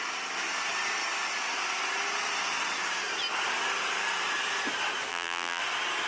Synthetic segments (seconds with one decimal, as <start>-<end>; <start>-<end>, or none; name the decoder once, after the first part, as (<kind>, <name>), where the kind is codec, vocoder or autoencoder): 5.1-5.6 (vocoder, BigVGAN v2)